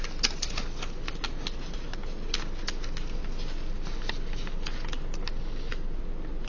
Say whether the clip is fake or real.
real